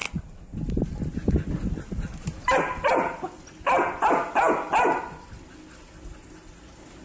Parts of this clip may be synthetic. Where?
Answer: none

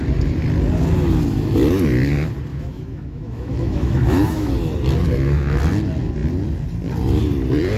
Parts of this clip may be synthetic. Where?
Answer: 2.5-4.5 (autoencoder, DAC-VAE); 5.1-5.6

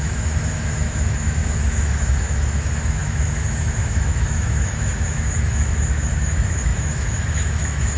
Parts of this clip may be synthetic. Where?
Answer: 0.0-8.0 (autoencoder, DAC-VAE)

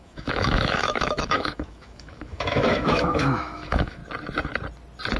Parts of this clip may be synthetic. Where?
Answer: 0.0-4.0 (autoencoder, DAC-VAE)

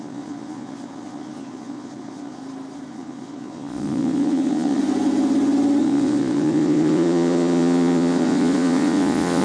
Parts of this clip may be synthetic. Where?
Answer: 0.0-2.4 (vocoder, Vocos); 2.9-4.8; 5.8-9.4

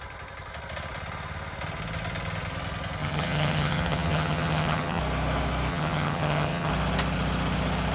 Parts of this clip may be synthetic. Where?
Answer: 3.0-5.0 (vocoder, HiFi-GAN); 5.7-6.7

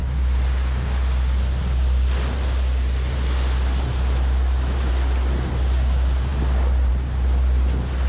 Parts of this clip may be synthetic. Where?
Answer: none